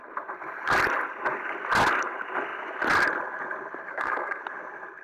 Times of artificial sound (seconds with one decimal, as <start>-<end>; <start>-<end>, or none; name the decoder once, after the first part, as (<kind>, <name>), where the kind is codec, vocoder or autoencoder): 3.9-4.4 (codec, SNAC)